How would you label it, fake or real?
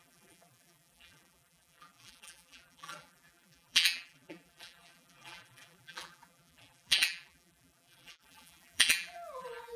fake